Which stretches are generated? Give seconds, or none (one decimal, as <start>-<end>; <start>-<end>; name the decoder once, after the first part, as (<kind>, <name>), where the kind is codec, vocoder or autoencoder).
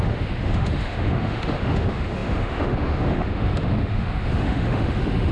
0.0-5.3 (autoencoder, DAC-VAE)